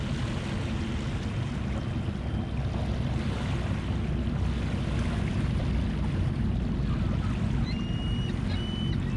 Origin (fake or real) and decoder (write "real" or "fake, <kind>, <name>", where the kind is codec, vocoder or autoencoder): real